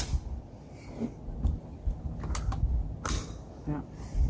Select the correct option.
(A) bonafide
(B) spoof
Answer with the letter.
A